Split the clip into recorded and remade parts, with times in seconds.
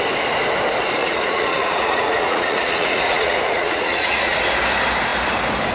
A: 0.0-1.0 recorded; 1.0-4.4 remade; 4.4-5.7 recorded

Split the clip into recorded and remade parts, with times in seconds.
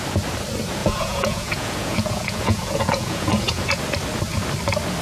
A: 0.0-0.8 recorded; 0.8-3.8 remade; 3.8-5.0 recorded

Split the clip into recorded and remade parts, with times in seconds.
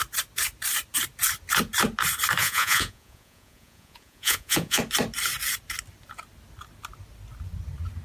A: 0.0-2.4 recorded; 2.4-4.8 remade; 4.8-8.0 recorded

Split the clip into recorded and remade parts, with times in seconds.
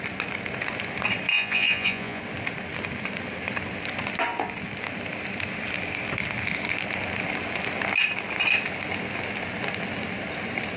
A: 0.0-1.3 recorded; 1.3-2.2 remade; 2.2-10.8 recorded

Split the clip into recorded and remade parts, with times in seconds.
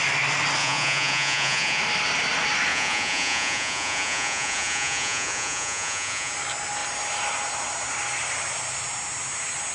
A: 0.0-0.6 recorded; 0.6-1.8 remade; 1.8-2.7 recorded; 2.7-6.3 remade; 6.3-9.7 recorded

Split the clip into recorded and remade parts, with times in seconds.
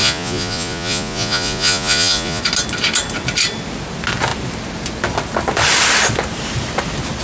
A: 0.0-2.4 remade; 2.4-7.2 recorded